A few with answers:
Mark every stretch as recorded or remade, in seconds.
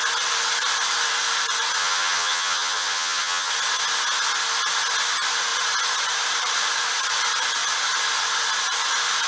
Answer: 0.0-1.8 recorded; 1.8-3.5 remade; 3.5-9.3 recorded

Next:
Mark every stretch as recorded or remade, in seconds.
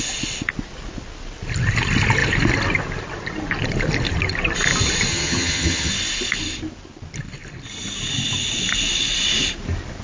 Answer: 0.0-5.1 recorded; 5.1-5.9 remade; 5.9-10.0 recorded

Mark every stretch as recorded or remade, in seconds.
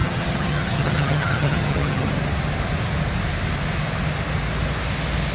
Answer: 0.0-2.1 remade; 2.1-5.3 recorded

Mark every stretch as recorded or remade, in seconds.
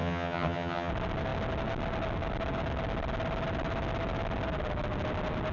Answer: 0.0-0.9 remade; 0.9-5.5 recorded